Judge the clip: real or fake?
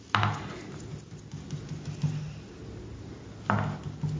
real